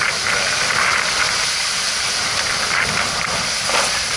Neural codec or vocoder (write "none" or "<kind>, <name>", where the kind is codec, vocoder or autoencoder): none